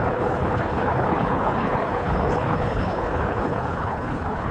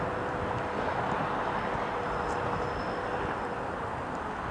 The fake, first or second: first